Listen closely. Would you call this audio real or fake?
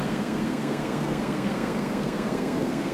fake